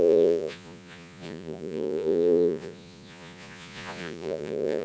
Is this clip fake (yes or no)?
yes